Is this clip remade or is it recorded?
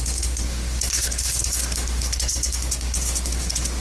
remade